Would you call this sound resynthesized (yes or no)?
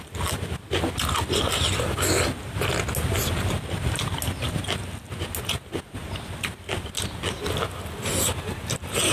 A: no